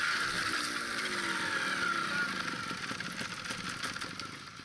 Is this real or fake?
real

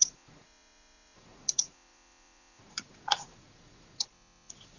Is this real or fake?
fake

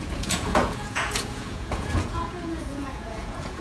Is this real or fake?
fake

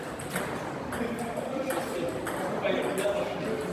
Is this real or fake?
real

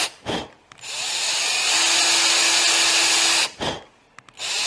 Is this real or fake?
real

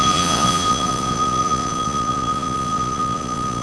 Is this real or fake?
fake